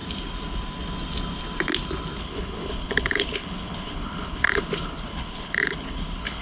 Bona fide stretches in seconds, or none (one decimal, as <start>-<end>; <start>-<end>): 0.0-2.2